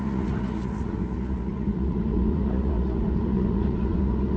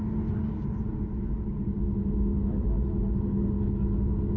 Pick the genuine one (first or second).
second